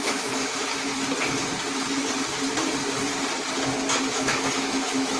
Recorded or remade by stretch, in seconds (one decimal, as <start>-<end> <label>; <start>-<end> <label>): 0.0-0.9 remade; 0.9-4.0 recorded; 4.0-5.2 remade